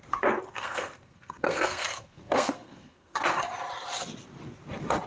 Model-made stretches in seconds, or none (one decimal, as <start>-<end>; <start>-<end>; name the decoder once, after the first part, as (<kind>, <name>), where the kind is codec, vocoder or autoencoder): 0.5-3.2 (codec, SNAC)